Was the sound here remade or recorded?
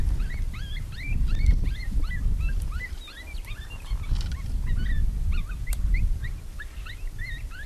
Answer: recorded